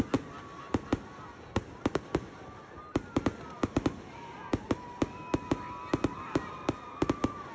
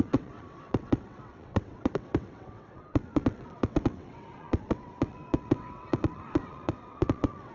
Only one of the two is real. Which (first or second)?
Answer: first